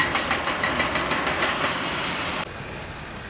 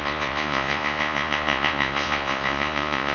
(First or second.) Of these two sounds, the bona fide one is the first